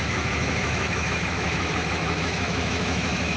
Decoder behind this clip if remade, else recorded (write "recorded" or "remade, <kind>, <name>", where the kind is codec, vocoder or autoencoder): remade, autoencoder, DAC-VAE